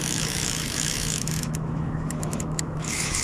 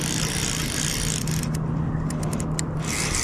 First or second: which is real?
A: second